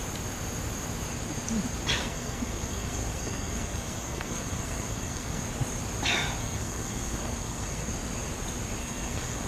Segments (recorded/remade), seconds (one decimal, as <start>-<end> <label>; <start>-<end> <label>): 0.0-2.0 recorded; 2.0-5.4 remade; 5.4-6.4 recorded; 6.4-7.9 remade; 7.9-8.8 recorded; 8.8-9.5 remade